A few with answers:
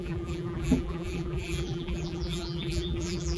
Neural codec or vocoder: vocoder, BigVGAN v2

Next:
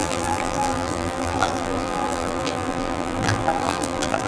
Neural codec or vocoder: vocoder, BigVGAN v2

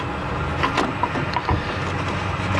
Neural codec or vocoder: none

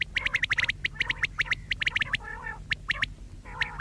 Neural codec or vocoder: vocoder, BigVGAN v2